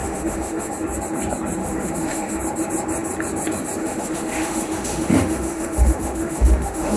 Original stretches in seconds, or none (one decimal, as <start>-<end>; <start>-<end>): 0.7-1.6; 2.4-3.8